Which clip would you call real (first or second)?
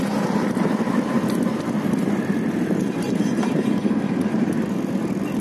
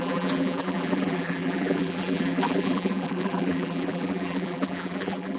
first